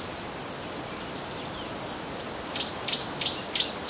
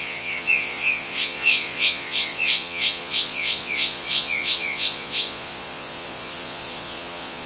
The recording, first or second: first